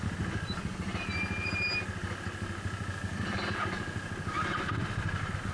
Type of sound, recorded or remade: recorded